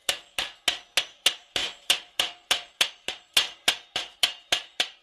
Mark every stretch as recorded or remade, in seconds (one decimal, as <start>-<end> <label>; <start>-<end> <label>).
0.0-1.0 recorded; 1.0-5.0 remade